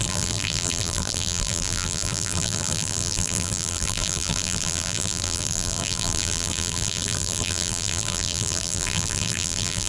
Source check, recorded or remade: remade